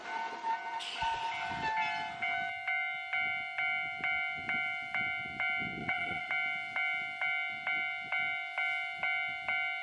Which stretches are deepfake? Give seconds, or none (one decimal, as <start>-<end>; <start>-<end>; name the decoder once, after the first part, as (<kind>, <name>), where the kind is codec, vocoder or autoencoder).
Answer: 5.8-6.3 (vocoder, Vocos)

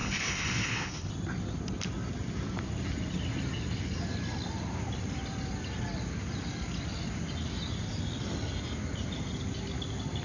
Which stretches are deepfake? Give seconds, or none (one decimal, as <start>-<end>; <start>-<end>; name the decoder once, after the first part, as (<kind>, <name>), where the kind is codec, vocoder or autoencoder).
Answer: 0.0-1.1 (codec, HILCodec)

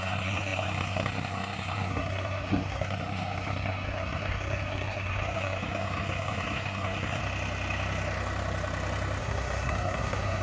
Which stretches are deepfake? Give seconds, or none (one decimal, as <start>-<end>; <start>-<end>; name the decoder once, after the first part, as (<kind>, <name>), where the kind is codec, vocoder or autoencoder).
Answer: 0.0-7.2 (codec, SNAC); 9.2-10.4

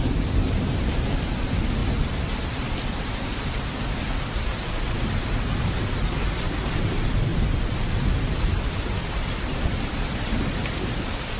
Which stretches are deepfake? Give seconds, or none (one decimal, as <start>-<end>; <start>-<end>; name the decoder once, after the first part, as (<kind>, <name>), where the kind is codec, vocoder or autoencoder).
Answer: 0.0-1.8 (vocoder, BigVGAN v2); 4.9-11.4

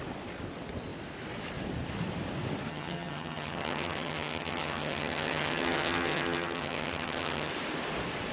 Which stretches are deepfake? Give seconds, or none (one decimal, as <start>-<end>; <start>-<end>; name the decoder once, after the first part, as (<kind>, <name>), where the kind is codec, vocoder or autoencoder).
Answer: 2.7-7.5 (vocoder, HiFi-GAN)

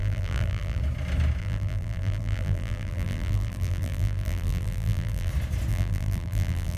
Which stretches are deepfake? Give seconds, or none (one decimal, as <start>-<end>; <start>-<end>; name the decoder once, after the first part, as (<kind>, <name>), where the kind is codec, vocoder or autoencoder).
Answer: 0.0-0.8 (vocoder, BigVGAN v2); 1.4-5.3; 5.7-6.8

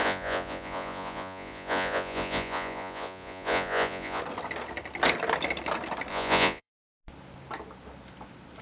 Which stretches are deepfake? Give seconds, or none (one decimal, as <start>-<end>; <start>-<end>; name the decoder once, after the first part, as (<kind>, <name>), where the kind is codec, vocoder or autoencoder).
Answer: 0.0-4.2 (vocoder, Vocos); 6.1-6.7

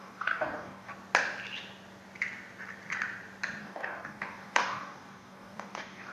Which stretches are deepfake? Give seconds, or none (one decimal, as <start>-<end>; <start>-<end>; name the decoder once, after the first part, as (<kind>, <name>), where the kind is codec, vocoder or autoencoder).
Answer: 0.0-0.9 (codec, DAC); 3.6-6.1